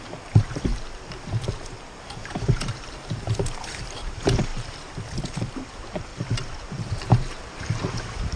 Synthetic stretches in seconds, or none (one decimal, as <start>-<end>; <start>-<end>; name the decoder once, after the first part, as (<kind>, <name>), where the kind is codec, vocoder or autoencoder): 0.0-0.7 (vocoder, BigVGAN v2); 1.5-6.1; 6.7-8.4